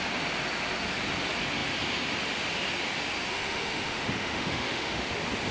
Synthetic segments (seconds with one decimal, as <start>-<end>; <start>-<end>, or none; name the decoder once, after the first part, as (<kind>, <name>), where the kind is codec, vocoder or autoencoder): 3.3-5.1 (autoencoder, DAC-VAE)